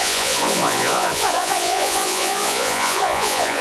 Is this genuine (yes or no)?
no